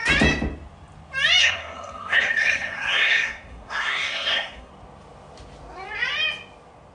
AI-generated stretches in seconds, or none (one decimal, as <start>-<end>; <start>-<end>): 1.4-4.7